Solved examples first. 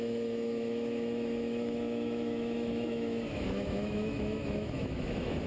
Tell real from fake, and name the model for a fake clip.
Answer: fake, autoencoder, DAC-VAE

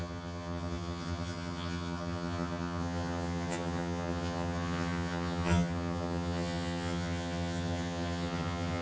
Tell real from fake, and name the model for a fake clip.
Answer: fake, vocoder, HiFi-GAN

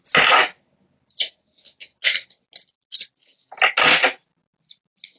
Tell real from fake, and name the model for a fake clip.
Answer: real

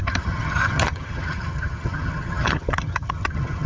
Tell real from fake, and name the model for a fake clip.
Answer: fake, vocoder, HiFi-GAN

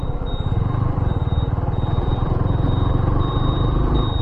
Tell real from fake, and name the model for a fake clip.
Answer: fake, vocoder, BigVGAN v2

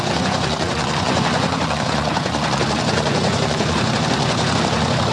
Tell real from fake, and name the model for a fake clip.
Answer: fake, vocoder, Vocos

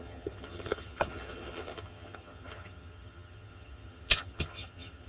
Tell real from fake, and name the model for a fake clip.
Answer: fake, vocoder, HiFi-GAN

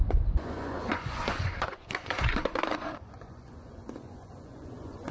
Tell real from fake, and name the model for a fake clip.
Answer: fake, vocoder, Vocos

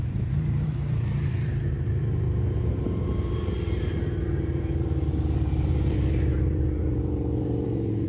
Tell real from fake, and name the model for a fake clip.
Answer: fake, vocoder, BigVGAN v2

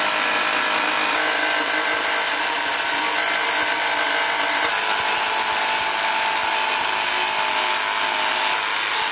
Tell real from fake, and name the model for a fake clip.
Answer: real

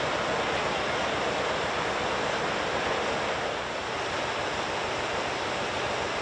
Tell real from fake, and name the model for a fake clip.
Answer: real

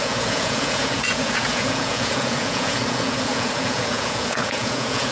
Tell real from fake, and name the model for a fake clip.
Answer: fake, vocoder, Vocos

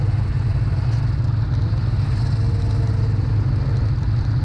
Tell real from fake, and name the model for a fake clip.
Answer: real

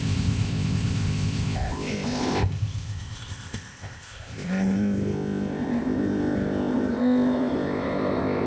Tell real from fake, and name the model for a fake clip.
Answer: fake, codec, ZipCodec